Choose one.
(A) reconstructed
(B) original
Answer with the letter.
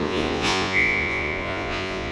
A